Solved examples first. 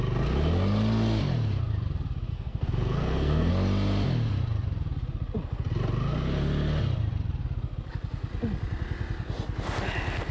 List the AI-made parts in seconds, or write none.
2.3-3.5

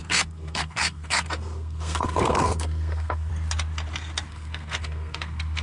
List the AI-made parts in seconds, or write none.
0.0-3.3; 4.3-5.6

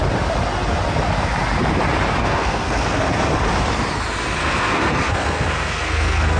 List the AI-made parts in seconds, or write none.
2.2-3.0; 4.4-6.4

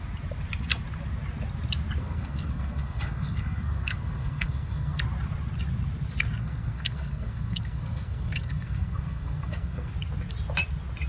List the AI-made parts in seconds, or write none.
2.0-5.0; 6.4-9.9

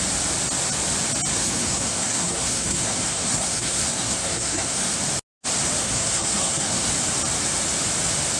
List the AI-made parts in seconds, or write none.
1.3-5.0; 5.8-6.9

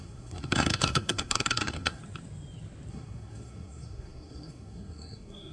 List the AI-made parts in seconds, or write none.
0.0-2.0; 2.9-5.5